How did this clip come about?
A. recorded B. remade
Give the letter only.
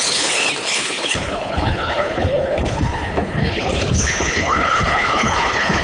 B